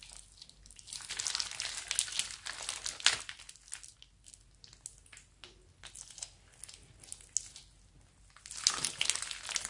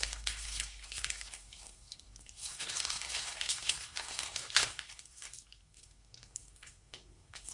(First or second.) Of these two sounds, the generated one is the second